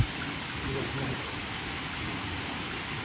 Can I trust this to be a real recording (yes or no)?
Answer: yes